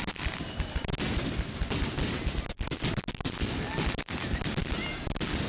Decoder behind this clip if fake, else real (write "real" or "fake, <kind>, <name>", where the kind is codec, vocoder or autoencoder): real